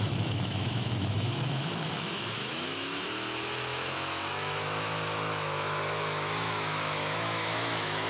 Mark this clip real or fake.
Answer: fake